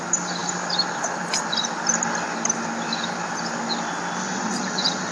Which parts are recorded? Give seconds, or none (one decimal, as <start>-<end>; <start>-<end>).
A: 0.0-4.2